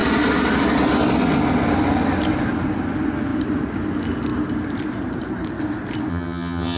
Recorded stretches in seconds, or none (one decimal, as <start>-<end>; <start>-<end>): 0.0-6.1